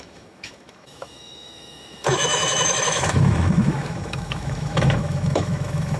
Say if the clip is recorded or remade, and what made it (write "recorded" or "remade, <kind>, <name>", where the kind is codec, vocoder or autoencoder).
remade, autoencoder, DAC-VAE